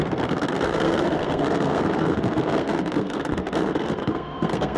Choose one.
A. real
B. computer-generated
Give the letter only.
B